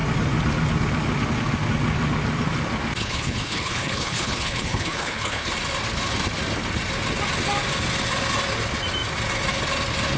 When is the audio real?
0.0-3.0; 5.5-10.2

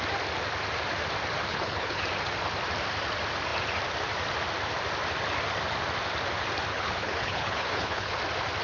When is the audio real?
0.0-1.5; 2.0-6.7; 8.2-8.6